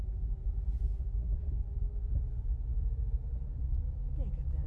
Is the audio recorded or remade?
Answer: recorded